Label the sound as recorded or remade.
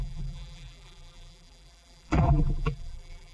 remade